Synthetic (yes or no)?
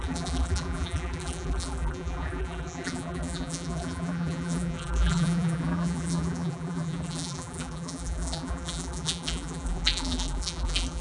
yes